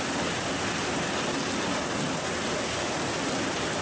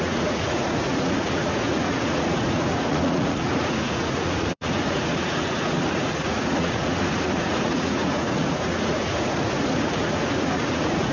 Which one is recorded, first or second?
first